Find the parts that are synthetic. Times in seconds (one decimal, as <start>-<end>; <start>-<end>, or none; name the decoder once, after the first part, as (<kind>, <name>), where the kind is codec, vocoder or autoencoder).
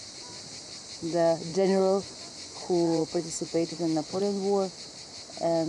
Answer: 1.5-4.2 (vocoder, Vocos)